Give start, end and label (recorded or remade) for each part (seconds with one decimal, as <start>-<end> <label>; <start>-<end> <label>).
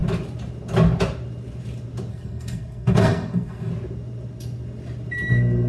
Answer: 0.0-2.1 recorded; 2.1-3.7 remade; 3.7-5.7 recorded